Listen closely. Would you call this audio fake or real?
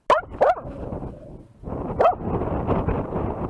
real